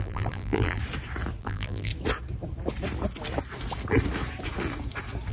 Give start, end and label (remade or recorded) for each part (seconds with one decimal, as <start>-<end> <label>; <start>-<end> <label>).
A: 0.0-0.8 remade; 0.8-1.4 recorded; 1.4-1.9 remade; 1.9-5.3 recorded